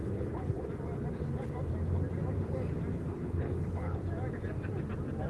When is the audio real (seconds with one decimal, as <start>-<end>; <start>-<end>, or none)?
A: 0.7-2.9; 4.0-5.3